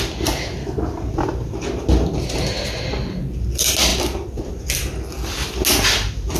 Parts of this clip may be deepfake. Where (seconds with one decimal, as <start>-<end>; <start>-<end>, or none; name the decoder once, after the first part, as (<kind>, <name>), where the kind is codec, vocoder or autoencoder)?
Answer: 0.6-1.1 (codec, SNAC)